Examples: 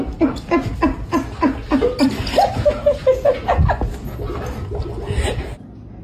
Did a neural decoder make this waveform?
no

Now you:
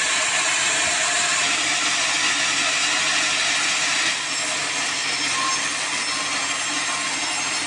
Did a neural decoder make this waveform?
no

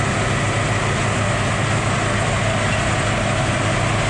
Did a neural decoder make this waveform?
no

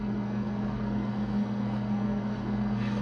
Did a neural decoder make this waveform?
yes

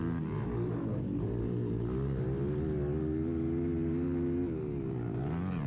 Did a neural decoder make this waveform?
no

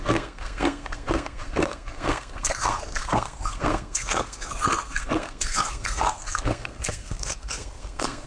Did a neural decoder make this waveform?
yes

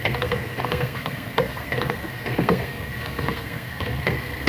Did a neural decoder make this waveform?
yes